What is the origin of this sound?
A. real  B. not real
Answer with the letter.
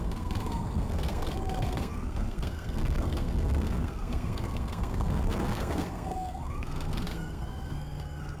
B